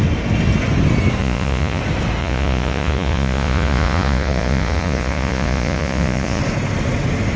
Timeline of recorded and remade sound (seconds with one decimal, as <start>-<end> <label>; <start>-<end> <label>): 0.0-1.2 recorded; 1.2-1.8 remade; 1.8-2.2 recorded; 2.2-6.4 remade; 6.4-7.4 recorded